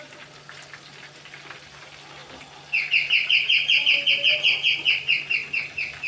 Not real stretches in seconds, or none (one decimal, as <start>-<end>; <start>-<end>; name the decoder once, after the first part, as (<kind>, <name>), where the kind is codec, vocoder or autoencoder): none